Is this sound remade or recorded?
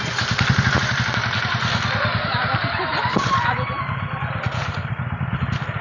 recorded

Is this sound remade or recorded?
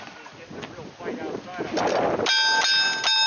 recorded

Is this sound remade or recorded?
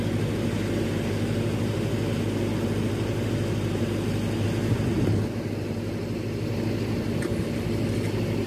recorded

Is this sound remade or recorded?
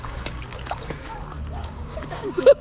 remade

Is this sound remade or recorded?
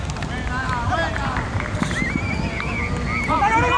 recorded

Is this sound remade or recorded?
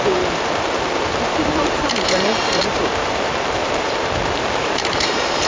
remade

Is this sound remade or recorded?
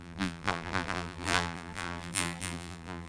remade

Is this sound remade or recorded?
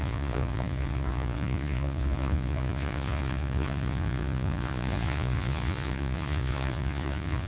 remade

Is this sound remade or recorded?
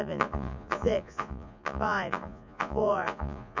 remade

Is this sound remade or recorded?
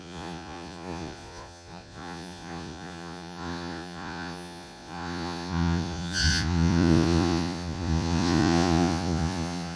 remade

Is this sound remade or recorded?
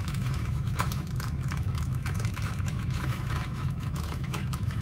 remade